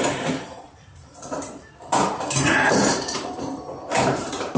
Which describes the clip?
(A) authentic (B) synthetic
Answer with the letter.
B